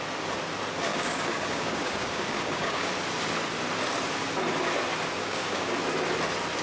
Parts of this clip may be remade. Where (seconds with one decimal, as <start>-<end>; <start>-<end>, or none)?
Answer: 0.9-2.9; 5.2-5.7